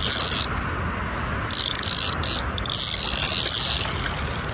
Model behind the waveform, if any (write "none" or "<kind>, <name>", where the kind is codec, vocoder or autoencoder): none